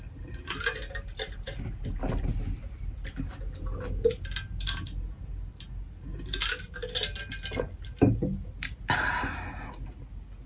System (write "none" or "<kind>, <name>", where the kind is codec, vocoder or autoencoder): none